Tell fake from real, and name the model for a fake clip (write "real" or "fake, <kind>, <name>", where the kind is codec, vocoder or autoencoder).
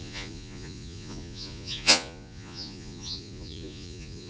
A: fake, vocoder, Vocos